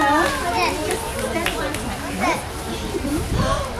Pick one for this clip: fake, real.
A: real